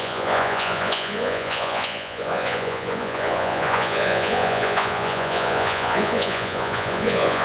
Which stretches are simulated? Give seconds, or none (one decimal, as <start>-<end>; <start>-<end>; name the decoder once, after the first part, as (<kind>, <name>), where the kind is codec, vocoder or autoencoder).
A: 0.0-7.4 (vocoder, Vocos)